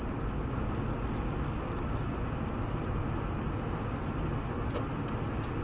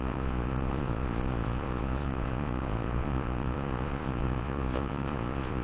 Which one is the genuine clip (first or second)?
first